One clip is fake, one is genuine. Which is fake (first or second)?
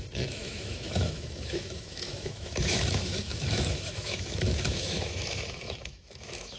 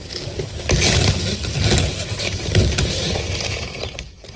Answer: first